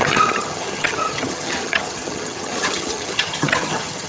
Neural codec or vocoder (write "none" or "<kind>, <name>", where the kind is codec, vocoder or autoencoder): vocoder, HiFi-GAN